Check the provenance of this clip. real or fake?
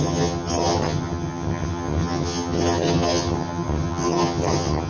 fake